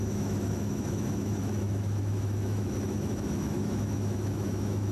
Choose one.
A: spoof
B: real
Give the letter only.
A